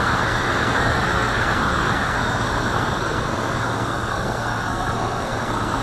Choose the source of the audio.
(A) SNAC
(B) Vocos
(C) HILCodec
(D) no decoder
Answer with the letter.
A